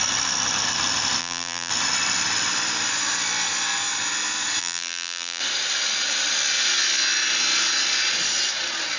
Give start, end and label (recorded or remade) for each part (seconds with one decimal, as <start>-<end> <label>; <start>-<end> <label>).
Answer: 0.0-1.2 recorded; 1.2-1.7 remade; 1.7-4.6 recorded; 4.6-5.4 remade; 5.4-9.0 recorded